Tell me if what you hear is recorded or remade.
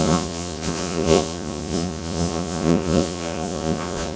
remade